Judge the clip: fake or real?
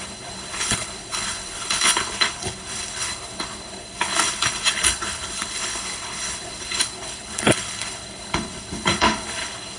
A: fake